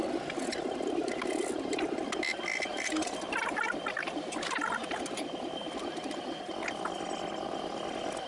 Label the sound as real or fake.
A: real